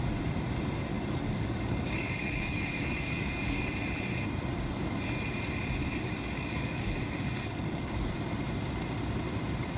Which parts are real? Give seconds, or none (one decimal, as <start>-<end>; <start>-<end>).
0.0-0.9; 3.7-5.8; 7.9-9.8